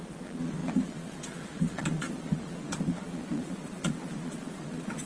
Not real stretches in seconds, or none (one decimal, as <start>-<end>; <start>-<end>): 0.0-5.1